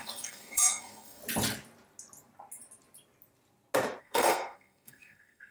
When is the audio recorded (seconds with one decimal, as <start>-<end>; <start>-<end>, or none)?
1.2-4.0